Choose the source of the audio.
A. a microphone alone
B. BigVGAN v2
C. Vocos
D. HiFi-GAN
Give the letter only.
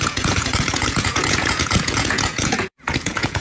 C